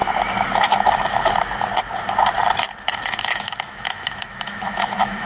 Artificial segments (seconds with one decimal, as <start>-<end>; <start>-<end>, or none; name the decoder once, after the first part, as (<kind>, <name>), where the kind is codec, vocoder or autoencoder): 3.2-5.3 (autoencoder, DAC-VAE)